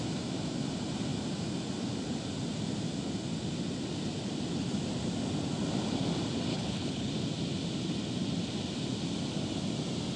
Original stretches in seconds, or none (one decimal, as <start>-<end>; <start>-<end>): 0.0-6.5; 7.1-10.2

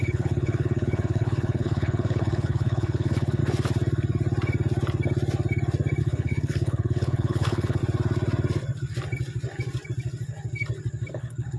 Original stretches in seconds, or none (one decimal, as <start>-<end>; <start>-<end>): 3.4-6.0; 7.8-11.1

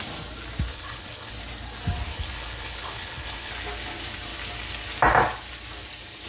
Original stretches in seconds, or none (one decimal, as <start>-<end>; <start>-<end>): 0.0-0.7; 1.3-2.1; 3.5-6.3

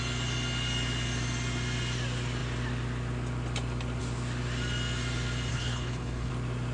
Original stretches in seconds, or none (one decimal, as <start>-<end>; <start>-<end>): 0.0-5.5; 6.3-6.7